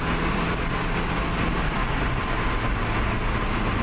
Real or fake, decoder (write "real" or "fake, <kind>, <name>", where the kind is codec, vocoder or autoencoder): real